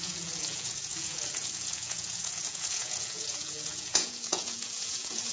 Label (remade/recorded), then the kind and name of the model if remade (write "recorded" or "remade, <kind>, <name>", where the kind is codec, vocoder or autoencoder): remade, vocoder, Vocos